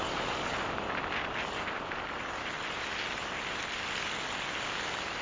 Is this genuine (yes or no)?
yes